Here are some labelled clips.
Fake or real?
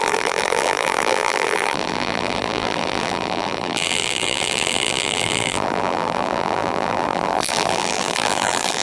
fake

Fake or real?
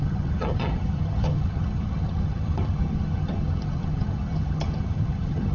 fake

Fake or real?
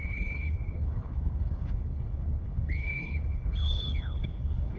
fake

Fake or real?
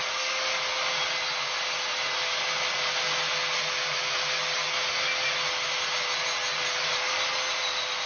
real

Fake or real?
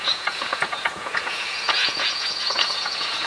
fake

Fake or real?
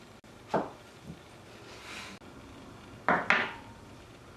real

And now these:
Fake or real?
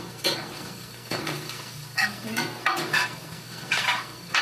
fake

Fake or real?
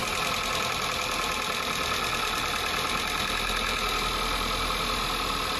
real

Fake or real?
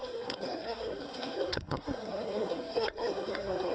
fake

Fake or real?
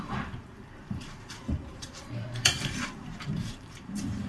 fake